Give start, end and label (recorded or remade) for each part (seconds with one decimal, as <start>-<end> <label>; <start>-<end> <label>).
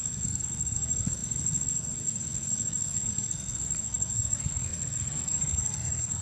0.0-6.2 remade